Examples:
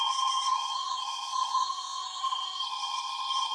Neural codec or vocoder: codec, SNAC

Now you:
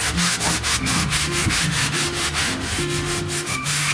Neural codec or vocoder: autoencoder, DAC-VAE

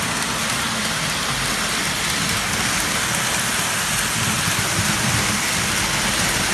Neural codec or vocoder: none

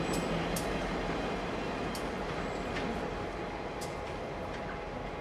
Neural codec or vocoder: none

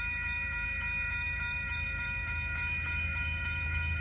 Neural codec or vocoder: autoencoder, DAC-VAE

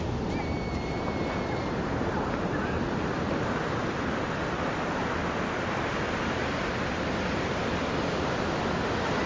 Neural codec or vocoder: none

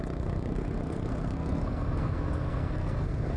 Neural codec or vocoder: codec, SNAC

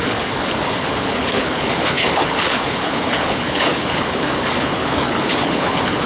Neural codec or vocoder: codec, HILCodec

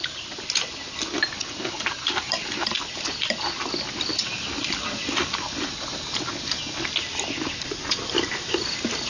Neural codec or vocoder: none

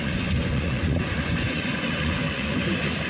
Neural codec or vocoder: vocoder, Vocos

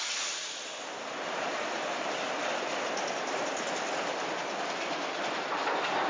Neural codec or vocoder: none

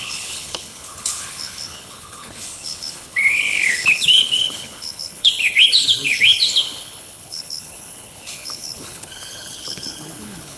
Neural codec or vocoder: codec, HILCodec